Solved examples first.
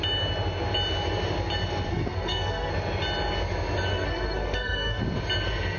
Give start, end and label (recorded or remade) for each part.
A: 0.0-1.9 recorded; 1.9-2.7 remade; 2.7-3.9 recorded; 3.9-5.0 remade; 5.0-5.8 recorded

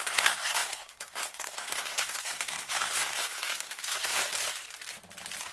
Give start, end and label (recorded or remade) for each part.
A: 0.0-4.2 remade; 4.2-5.5 recorded

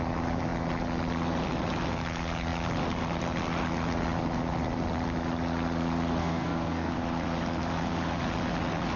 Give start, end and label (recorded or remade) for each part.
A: 0.0-6.2 recorded; 6.2-6.9 remade; 6.9-9.0 recorded

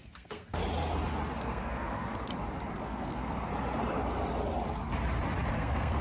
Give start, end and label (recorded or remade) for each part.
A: 0.0-0.6 remade; 0.6-1.4 recorded; 1.4-2.3 remade; 2.3-2.8 recorded; 2.8-3.5 remade; 3.5-5.5 recorded; 5.5-6.0 remade

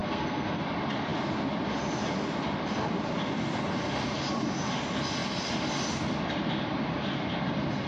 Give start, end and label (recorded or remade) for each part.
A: 0.0-0.6 remade; 0.6-7.9 recorded

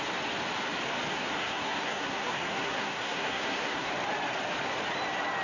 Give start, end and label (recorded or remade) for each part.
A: 0.0-1.1 recorded; 1.1-3.9 remade; 3.9-5.4 recorded